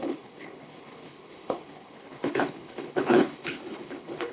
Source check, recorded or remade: remade